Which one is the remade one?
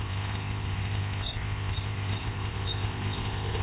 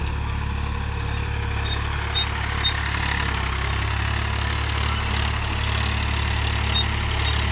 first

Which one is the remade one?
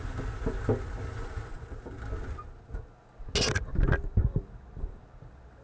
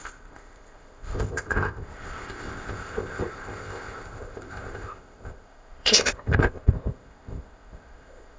second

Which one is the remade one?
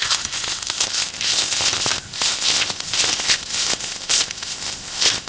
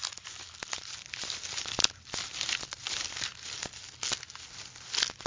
first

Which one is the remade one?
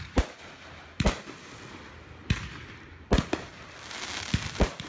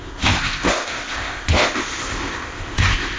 second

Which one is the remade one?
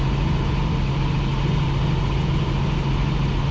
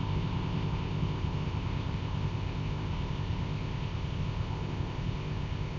second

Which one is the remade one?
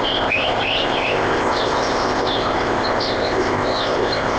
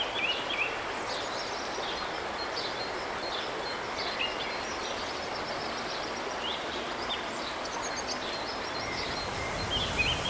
first